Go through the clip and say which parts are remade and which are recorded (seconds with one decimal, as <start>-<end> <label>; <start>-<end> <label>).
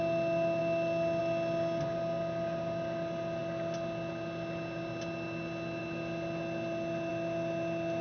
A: 0.0-8.0 recorded